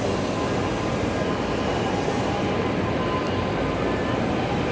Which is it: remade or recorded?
recorded